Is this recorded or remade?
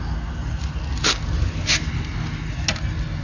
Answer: recorded